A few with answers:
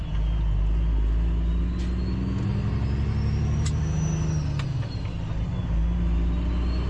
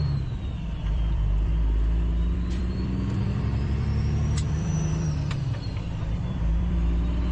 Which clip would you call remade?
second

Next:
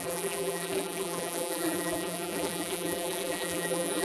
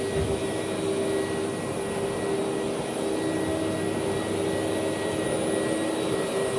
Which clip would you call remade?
first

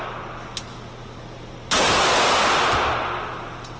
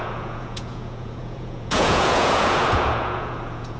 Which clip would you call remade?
second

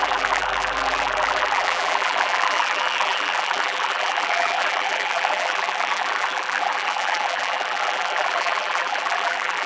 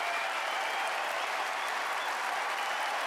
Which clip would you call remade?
first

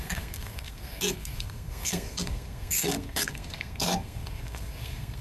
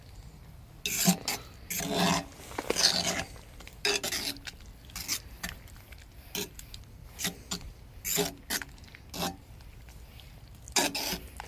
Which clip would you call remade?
first